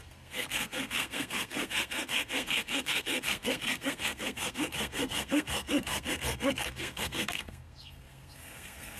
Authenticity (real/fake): fake